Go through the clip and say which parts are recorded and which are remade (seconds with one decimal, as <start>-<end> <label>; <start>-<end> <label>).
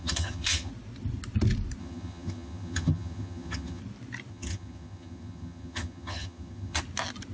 0.0-0.7 remade; 0.7-1.8 recorded; 1.8-3.8 remade; 3.8-4.3 recorded; 4.3-6.8 remade; 6.8-7.3 recorded